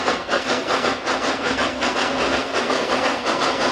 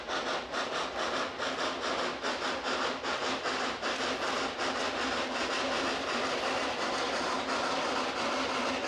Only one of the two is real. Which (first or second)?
second